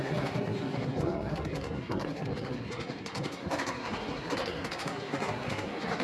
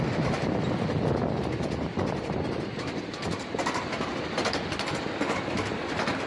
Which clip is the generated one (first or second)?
first